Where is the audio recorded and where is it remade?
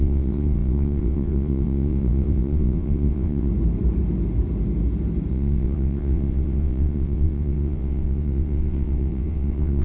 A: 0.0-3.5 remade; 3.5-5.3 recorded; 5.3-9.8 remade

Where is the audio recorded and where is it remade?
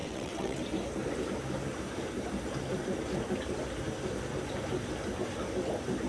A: 0.0-0.6 remade; 0.6-6.1 recorded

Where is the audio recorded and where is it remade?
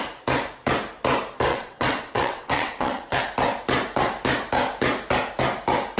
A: 0.0-1.5 recorded; 1.5-3.2 remade; 3.2-6.0 recorded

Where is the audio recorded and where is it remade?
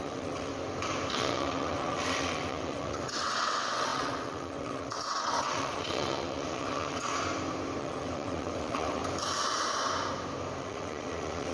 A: 0.0-0.5 remade; 0.5-1.1 recorded; 1.1-7.1 remade; 7.1-7.8 recorded; 7.8-9.0 remade; 9.0-10.6 recorded; 10.6-11.5 remade